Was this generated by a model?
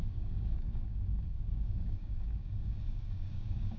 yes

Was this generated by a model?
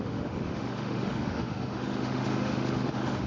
yes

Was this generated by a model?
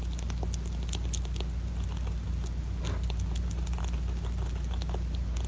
no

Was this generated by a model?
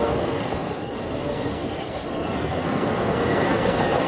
yes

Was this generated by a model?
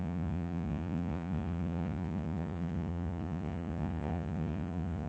yes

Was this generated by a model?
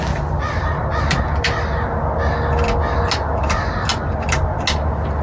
no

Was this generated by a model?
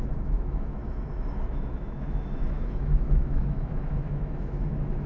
yes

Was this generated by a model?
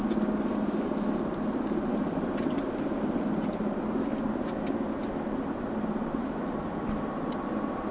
no